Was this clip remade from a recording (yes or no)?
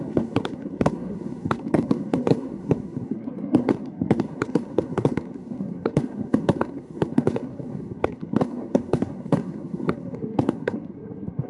yes